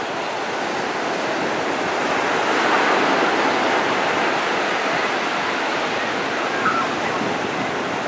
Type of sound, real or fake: real